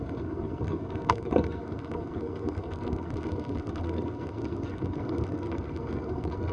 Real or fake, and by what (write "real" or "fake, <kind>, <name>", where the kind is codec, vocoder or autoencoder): fake, codec, SNAC